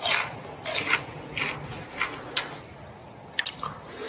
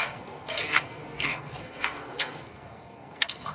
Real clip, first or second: first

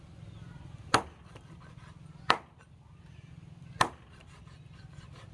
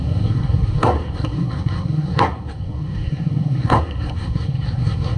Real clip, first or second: first